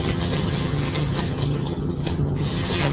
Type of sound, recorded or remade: remade